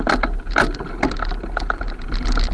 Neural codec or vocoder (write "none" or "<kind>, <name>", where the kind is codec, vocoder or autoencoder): none